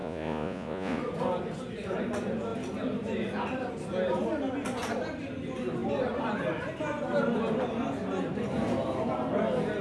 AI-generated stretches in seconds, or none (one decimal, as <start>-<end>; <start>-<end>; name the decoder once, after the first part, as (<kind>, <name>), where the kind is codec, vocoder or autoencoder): 0.0-1.0 (vocoder, Vocos)